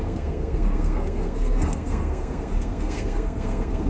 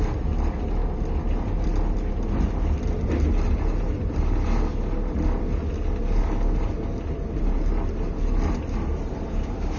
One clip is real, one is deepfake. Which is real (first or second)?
second